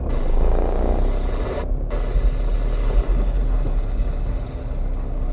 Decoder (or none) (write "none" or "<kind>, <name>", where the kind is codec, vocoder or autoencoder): none